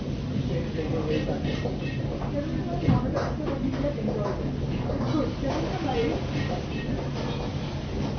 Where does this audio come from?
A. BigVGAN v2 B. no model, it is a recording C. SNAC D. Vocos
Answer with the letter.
B